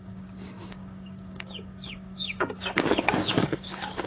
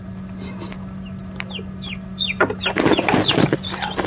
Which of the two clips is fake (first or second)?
first